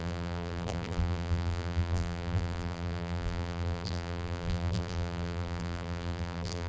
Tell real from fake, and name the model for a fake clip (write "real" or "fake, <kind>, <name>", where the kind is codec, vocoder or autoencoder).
fake, vocoder, BigVGAN v2